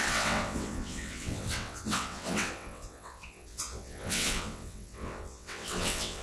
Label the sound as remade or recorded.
remade